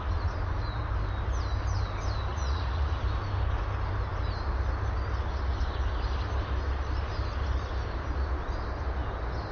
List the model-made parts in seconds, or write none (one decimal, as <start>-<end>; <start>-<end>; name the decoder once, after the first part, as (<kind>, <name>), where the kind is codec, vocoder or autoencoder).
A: 2.3-3.0 (vocoder, Vocos)